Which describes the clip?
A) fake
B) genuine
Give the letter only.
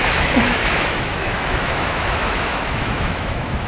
A